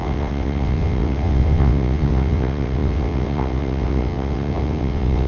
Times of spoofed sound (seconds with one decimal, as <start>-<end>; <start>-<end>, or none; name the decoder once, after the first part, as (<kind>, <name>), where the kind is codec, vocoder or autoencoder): 0.0-5.3 (vocoder, WaveNeXt)